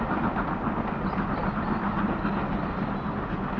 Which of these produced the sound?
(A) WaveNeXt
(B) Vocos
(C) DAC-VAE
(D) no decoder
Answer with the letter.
D